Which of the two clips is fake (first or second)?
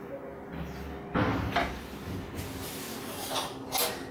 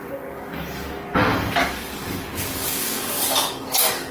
second